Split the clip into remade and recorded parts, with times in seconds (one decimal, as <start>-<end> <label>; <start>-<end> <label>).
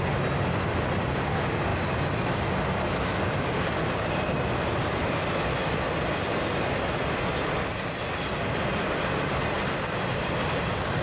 0.0-11.0 recorded